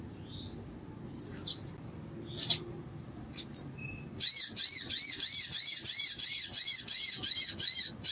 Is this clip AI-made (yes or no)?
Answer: no